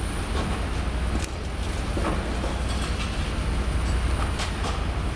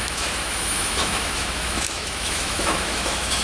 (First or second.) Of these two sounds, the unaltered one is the first